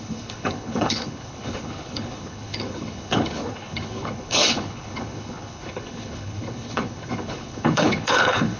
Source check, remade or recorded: remade